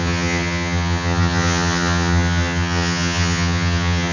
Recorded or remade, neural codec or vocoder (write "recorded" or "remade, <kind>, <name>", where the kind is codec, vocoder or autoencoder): remade, vocoder, HiFi-GAN